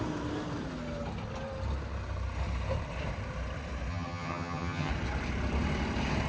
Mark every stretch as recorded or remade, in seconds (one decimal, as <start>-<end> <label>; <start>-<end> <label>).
0.0-3.9 recorded; 3.9-4.9 remade; 4.9-6.3 recorded

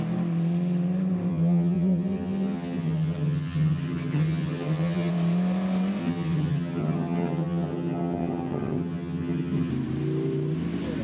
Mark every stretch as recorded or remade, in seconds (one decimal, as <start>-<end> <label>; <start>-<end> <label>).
0.0-1.3 recorded; 1.3-5.1 remade; 5.1-6.0 recorded; 6.0-9.7 remade; 9.7-11.0 recorded

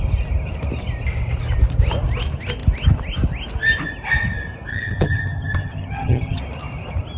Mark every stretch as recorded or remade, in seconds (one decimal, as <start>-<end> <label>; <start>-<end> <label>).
0.0-4.7 recorded; 4.7-6.4 remade; 6.4-7.2 recorded

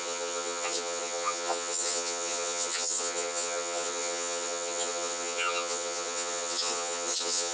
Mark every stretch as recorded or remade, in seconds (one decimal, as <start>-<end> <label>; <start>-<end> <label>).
0.0-7.5 remade

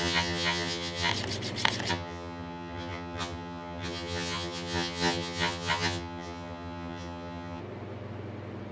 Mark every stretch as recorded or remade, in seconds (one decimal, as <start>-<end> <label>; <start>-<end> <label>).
0.0-1.1 remade; 1.1-1.9 recorded; 1.9-7.6 remade; 7.6-8.7 recorded